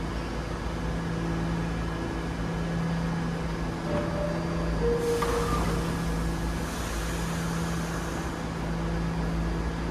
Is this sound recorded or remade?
recorded